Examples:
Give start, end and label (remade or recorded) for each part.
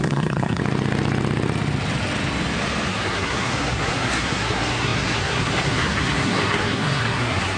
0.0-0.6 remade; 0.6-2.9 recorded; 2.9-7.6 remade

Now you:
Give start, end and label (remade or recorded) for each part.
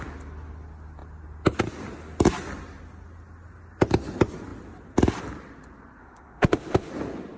0.0-6.0 recorded; 6.0-6.9 remade; 6.9-7.4 recorded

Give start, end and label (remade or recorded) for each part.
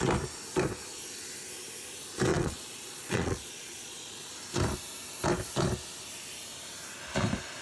0.0-2.3 recorded; 2.3-4.3 remade; 4.3-7.6 recorded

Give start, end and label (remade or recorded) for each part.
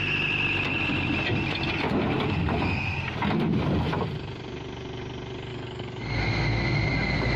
0.0-5.5 recorded; 5.5-6.0 remade; 6.0-7.4 recorded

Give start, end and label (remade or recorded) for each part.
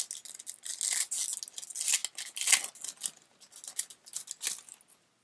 0.0-5.2 recorded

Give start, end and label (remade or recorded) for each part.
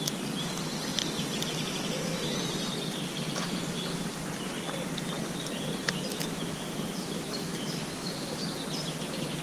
0.0-6.1 recorded; 6.1-8.4 remade; 8.4-9.4 recorded